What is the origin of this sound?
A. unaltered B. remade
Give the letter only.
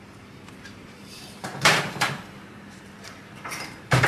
B